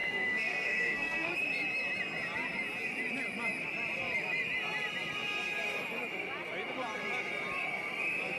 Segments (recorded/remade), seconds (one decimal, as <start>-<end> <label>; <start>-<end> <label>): 0.0-1.3 remade; 1.3-8.4 recorded